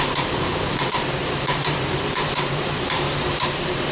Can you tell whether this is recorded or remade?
remade